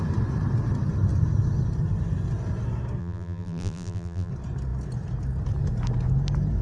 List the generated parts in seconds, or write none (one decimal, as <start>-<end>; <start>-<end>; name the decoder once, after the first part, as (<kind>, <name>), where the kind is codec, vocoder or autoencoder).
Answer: 3.0-4.3 (vocoder, BigVGAN v2)